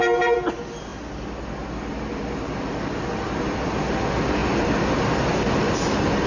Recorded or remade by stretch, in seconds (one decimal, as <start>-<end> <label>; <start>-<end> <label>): 0.0-6.3 recorded